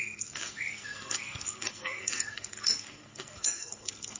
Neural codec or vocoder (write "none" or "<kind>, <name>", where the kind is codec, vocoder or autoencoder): codec, SNAC